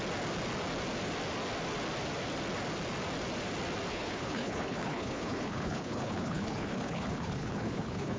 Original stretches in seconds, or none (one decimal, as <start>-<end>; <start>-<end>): 0.0-3.9